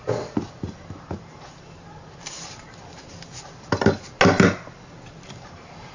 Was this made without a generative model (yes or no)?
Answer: yes